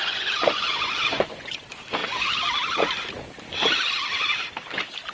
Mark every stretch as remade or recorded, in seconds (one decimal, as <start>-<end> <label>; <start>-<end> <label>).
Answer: 0.0-1.6 remade; 1.6-5.1 recorded